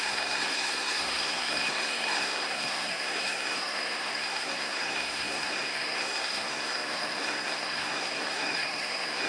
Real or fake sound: fake